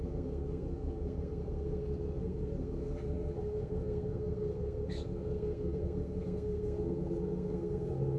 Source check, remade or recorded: remade